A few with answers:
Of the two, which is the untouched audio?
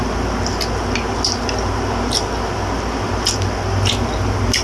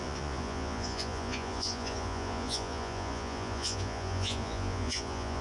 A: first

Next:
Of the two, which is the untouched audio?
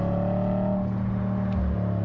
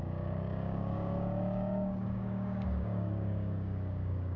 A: first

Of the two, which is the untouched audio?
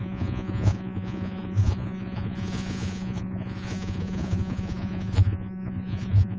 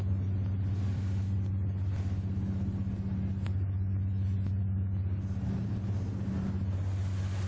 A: second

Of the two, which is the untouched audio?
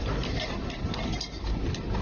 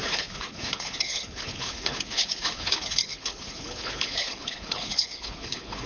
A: first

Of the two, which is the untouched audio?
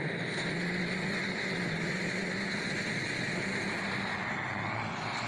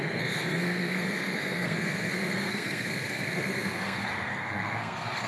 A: first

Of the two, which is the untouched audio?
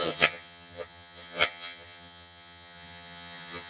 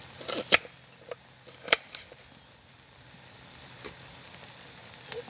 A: second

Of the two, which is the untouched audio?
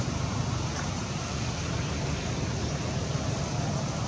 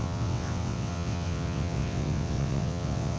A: first